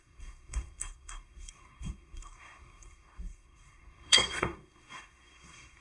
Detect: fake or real fake